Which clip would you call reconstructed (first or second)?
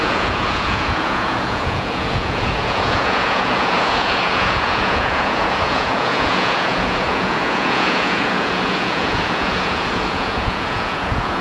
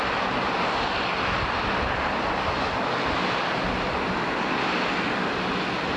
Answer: first